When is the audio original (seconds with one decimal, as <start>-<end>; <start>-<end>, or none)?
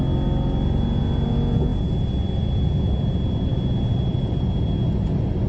0.0-5.5